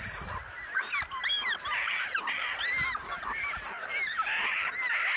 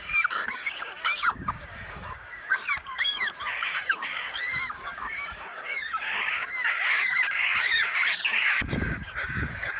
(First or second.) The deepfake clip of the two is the second